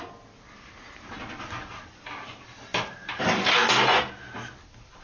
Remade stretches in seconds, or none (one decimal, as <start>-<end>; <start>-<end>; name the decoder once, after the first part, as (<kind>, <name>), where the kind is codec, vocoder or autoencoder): none

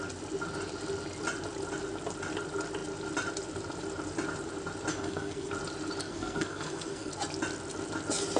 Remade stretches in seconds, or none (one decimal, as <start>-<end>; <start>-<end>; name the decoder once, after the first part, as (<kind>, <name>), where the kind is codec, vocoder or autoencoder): 4.9-5.5 (codec, SNAC); 6.0-7.1